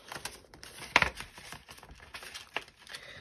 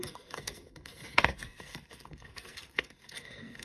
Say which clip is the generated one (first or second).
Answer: second